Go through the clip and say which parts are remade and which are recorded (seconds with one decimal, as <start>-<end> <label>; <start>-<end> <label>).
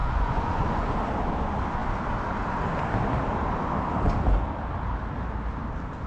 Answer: 0.0-0.9 remade; 0.9-6.1 recorded